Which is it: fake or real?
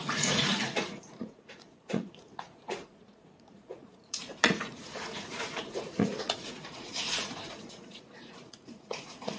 fake